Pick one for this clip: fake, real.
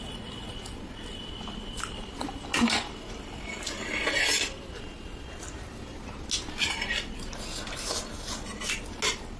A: real